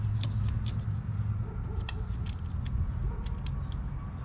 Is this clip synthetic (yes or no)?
no